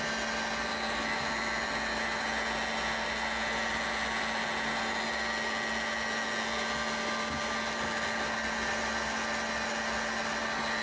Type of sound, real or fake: real